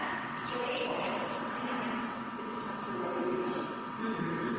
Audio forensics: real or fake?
fake